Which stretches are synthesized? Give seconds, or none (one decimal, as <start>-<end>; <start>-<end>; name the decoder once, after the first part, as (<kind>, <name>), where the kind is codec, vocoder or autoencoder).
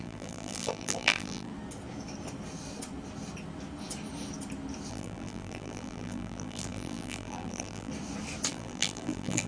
0.0-1.5 (vocoder, BigVGAN v2); 4.9-7.9; 8.5-9.5